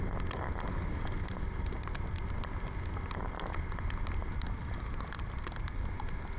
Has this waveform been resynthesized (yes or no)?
no